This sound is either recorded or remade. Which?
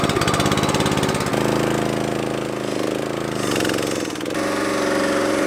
recorded